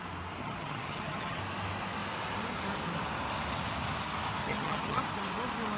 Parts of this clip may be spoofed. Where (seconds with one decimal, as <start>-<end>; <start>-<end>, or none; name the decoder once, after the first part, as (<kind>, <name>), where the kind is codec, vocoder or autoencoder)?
0.4-1.4 (vocoder, HiFi-GAN); 4.4-5.0